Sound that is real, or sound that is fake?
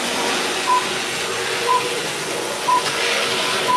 fake